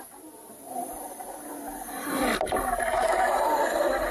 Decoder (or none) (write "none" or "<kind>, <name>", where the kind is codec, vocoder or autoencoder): vocoder, BigVGAN v2